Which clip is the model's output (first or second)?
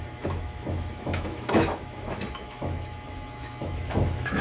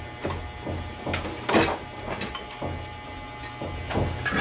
first